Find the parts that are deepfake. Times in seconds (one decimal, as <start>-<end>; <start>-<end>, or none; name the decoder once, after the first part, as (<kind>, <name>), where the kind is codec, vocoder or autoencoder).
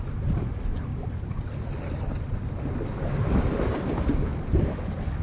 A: none